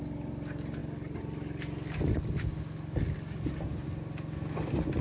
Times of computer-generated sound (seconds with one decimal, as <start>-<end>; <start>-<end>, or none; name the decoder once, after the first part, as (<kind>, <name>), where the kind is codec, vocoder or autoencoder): none